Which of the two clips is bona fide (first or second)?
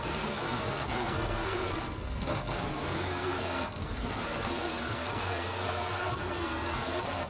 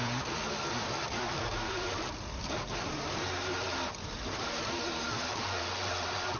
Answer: second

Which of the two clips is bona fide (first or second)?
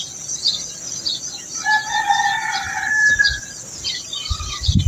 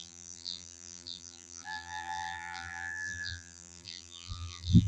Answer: first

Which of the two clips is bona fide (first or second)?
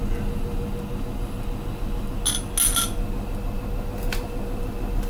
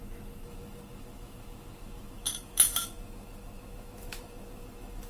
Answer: first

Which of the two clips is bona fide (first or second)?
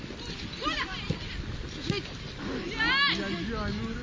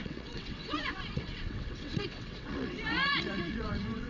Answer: first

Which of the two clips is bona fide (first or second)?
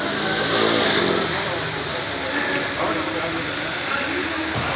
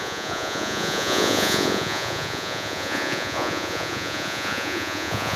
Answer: first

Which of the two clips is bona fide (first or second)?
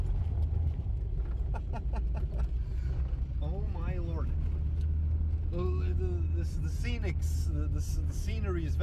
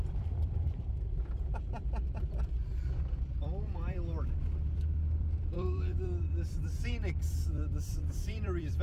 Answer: first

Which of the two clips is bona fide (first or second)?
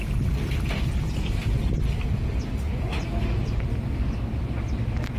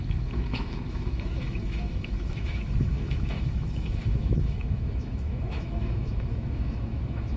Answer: first